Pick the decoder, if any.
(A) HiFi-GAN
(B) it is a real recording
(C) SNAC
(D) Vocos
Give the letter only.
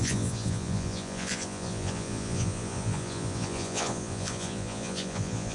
D